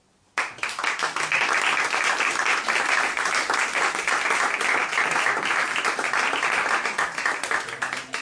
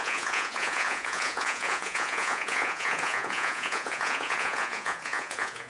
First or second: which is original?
first